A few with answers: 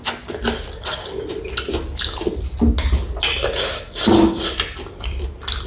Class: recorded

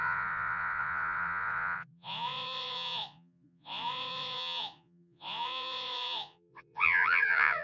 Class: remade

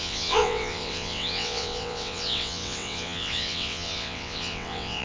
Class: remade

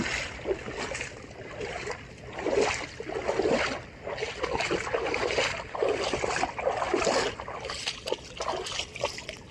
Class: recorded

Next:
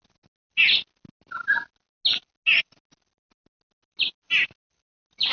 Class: recorded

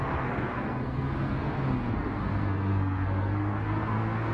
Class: remade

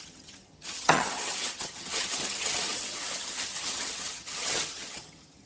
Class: remade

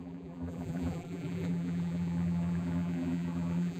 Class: remade